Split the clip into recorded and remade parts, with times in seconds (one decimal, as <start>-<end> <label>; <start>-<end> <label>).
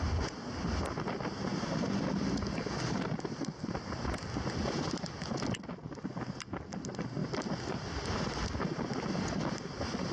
0.0-10.1 recorded